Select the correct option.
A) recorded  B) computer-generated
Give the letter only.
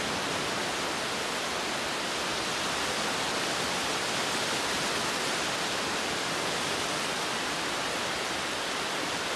A